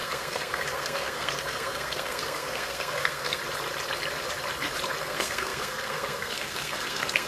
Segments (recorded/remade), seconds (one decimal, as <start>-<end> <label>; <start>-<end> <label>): 0.0-3.4 remade; 3.4-5.0 recorded; 5.0-7.3 remade